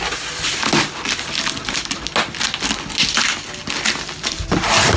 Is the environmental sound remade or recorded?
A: recorded